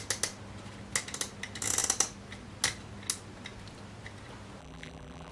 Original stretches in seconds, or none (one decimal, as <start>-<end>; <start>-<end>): 0.0-4.6